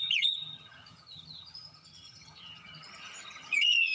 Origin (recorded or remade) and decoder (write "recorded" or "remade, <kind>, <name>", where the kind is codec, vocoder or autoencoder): remade, vocoder, HiFi-GAN